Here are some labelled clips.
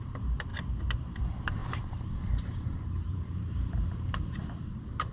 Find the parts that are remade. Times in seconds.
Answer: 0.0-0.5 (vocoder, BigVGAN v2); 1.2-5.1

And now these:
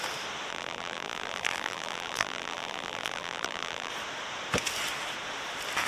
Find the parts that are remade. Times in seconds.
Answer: 0.5-3.9 (vocoder, BigVGAN v2)

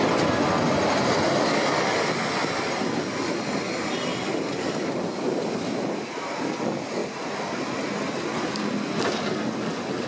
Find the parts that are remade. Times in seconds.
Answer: 2.4-2.9 (vocoder, BigVGAN v2)

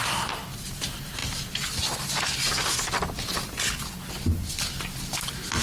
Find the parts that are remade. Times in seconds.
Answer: none

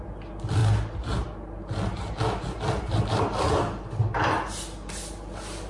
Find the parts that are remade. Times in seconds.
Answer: none

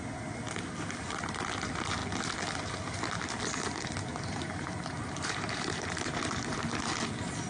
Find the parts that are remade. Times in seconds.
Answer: 4.1-6.8 (vocoder, BigVGAN v2)